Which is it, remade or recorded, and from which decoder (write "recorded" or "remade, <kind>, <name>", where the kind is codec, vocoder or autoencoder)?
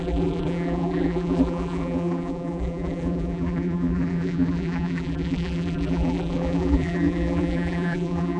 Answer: remade, vocoder, BigVGAN v2